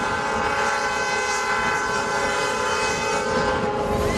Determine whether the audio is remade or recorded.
remade